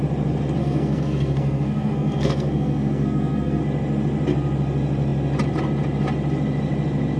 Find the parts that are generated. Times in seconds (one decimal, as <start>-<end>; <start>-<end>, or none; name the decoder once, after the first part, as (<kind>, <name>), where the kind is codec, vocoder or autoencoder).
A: 0.6-3.6 (codec, SNAC)